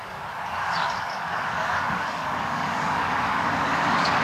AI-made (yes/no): yes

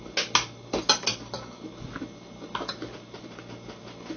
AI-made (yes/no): no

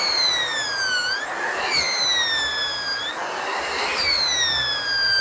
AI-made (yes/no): no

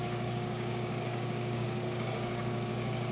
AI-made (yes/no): yes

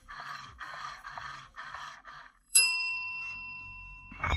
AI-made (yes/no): yes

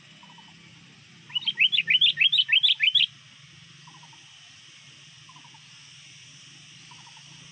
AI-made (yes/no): no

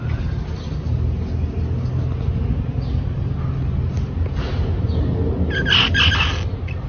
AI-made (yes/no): no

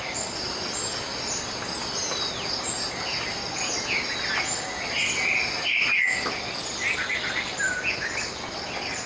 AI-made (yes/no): no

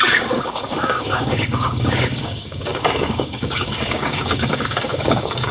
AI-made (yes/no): yes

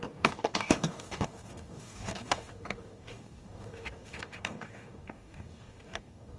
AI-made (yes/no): yes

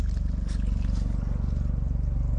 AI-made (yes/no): no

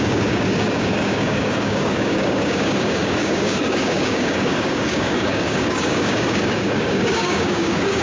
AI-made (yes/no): yes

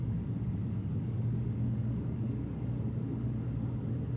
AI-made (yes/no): yes